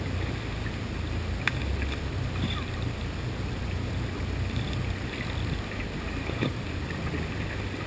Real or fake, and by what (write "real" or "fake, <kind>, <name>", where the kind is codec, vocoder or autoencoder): real